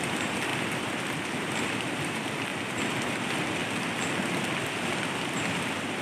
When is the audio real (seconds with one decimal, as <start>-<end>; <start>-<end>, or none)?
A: 0.0-6.0